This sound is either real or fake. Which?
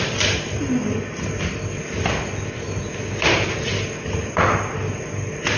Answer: real